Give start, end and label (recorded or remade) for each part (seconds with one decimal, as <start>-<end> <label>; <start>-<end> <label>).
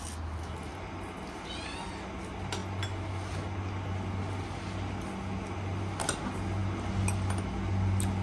0.0-8.2 recorded